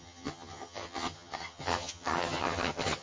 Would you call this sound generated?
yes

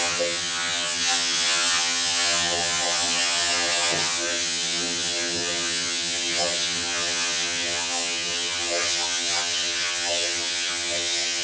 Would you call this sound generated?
yes